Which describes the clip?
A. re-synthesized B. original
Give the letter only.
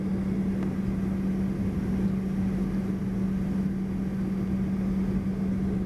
B